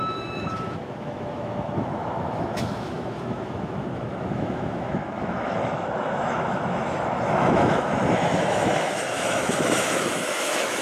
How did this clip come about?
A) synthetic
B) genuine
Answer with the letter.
A